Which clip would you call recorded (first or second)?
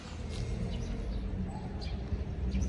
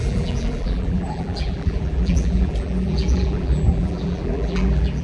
first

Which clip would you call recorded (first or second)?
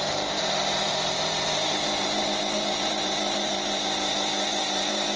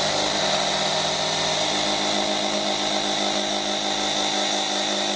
second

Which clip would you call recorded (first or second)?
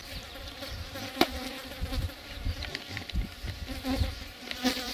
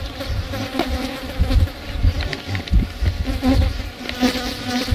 second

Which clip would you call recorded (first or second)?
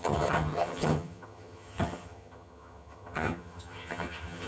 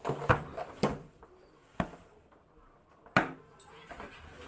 second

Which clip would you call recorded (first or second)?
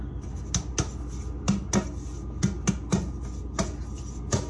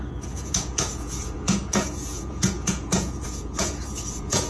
first